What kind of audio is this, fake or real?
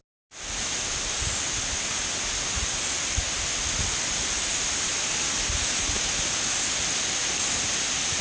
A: real